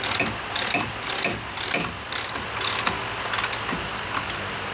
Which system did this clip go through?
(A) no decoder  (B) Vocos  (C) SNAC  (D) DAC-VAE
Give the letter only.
A